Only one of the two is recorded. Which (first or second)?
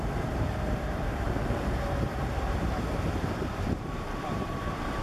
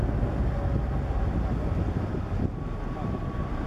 second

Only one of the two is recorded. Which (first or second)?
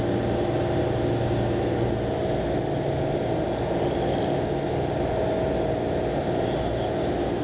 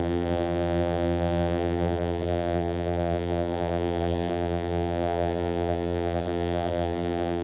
first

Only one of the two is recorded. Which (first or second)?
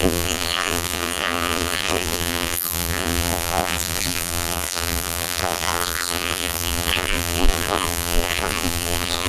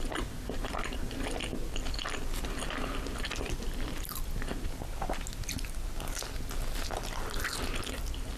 second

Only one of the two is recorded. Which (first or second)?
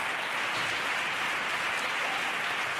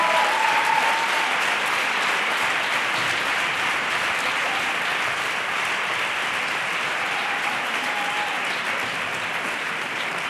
first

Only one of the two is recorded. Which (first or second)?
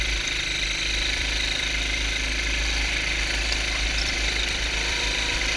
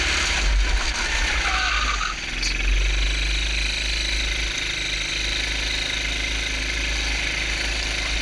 second